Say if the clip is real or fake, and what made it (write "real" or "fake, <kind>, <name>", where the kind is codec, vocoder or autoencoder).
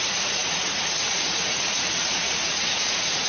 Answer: fake, vocoder, Vocos